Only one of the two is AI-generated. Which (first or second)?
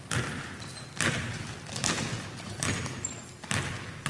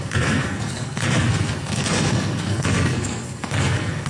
second